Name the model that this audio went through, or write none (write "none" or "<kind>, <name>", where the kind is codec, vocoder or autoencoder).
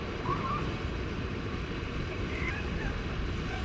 none